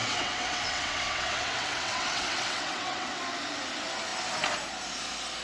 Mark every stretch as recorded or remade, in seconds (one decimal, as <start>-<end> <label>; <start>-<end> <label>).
0.0-3.2 remade; 3.2-5.4 recorded